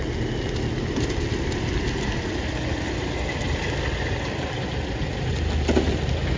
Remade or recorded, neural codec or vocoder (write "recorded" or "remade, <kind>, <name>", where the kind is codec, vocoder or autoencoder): recorded